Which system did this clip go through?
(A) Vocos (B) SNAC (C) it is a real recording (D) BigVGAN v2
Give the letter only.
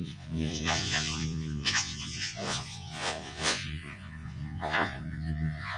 A